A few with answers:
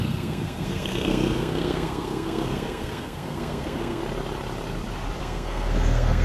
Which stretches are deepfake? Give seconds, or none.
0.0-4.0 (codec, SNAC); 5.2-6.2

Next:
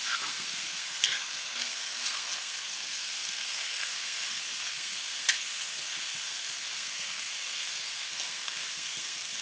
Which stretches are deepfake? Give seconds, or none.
0.0-9.4 (codec, SNAC)

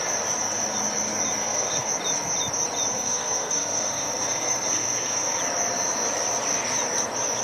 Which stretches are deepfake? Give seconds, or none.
1.4-1.9 (codec, SNAC); 2.9-5.4

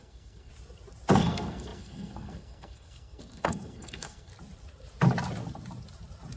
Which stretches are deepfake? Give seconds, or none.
0.0-0.5 (codec, SNAC); 1.1-4.3

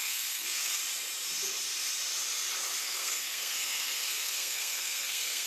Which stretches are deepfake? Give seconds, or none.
0.0-0.8 (codec, SNAC); 2.8-5.5